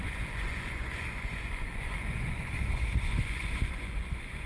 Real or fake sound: fake